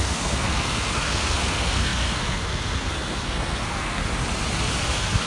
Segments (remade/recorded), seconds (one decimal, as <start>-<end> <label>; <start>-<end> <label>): 0.0-4.0 remade; 4.0-4.8 recorded; 4.8-5.3 remade